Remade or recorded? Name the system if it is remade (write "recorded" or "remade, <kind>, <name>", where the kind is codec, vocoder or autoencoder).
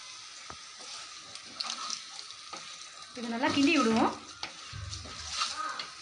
recorded